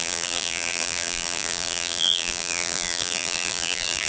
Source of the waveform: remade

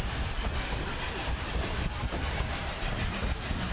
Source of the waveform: remade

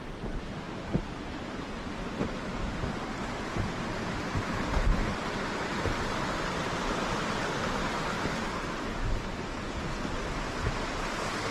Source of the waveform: recorded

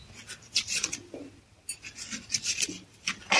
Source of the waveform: recorded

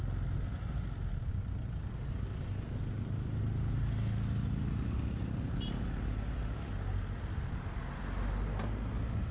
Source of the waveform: recorded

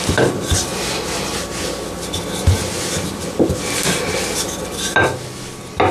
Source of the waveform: recorded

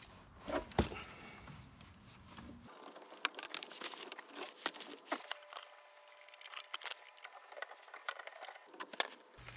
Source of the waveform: recorded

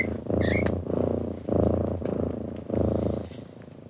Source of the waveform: recorded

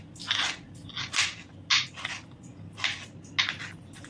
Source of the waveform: recorded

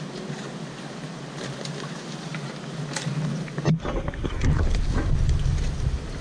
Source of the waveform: recorded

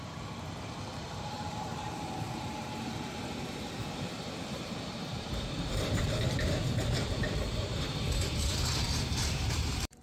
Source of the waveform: remade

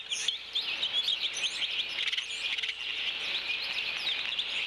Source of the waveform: recorded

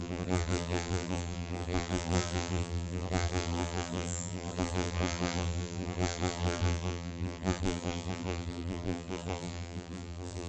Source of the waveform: remade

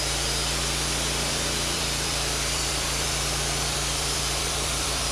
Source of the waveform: remade